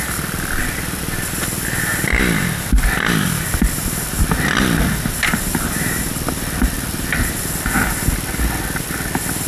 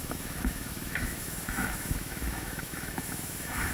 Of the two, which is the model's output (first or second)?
second